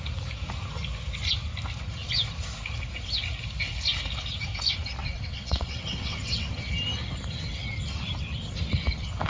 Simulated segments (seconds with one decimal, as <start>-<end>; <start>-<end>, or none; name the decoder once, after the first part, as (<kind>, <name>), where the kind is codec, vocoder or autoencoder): 5.0-6.5 (vocoder, WaveNeXt)